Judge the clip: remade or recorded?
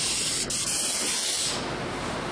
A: recorded